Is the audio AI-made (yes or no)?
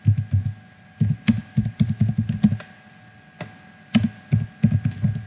no